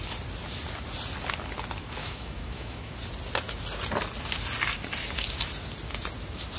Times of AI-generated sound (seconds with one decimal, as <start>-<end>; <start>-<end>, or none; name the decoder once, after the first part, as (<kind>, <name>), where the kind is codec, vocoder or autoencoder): 2.0-2.9 (autoencoder, DAC-VAE)